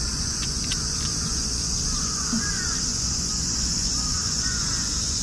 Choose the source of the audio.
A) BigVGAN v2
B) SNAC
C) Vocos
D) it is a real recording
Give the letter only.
C